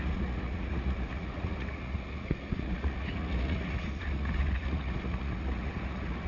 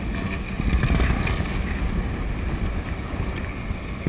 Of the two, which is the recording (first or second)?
second